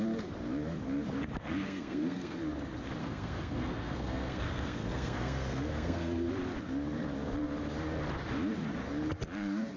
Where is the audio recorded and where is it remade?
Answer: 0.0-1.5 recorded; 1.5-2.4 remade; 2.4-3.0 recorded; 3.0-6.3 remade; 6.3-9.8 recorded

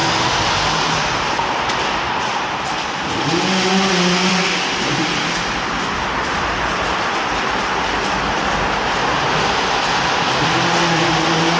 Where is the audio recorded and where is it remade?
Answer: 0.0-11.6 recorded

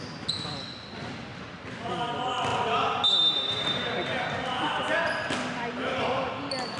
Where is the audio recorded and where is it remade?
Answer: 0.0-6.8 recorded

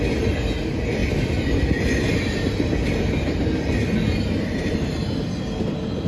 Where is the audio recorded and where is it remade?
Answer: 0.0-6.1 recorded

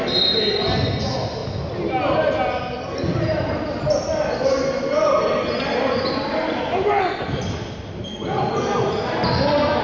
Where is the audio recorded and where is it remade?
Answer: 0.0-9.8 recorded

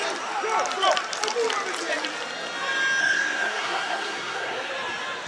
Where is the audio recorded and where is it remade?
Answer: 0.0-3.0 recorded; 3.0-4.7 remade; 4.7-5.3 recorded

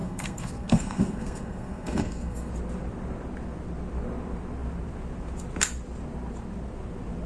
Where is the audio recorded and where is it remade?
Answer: 0.0-2.5 remade; 2.5-7.3 recorded

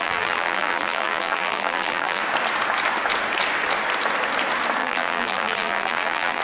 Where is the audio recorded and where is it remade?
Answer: 0.0-2.2 remade; 2.2-4.8 recorded; 4.8-6.4 remade